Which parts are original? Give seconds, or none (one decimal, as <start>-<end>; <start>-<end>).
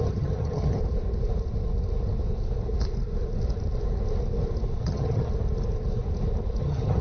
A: 0.8-4.8; 5.3-6.6